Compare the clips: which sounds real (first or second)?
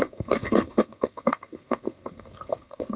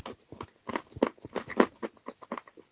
second